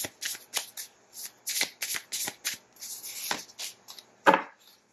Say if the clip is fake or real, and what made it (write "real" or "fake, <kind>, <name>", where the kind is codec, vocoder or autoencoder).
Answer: real